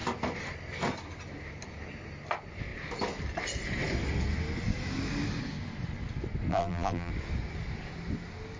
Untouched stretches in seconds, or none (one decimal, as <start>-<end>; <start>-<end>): 0.0-6.5; 7.1-8.6